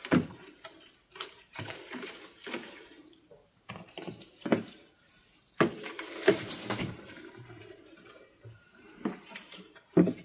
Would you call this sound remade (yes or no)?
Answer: yes